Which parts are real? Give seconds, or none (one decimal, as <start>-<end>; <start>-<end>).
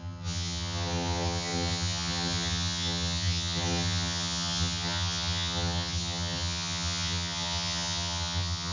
none